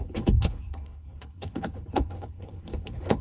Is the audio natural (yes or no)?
no